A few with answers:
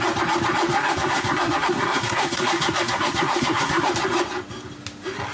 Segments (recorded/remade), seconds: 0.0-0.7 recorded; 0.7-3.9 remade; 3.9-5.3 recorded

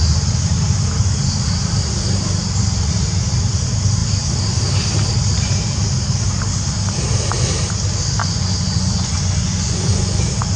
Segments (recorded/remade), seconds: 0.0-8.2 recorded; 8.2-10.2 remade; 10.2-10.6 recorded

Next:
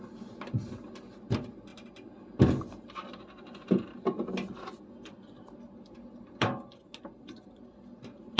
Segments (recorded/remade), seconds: 0.0-8.4 recorded

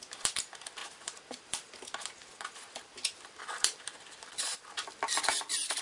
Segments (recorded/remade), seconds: 0.0-5.8 recorded